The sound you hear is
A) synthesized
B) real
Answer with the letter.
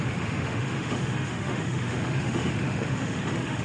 A